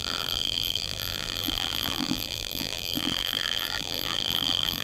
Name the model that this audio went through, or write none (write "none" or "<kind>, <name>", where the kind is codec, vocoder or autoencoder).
vocoder, BigVGAN v2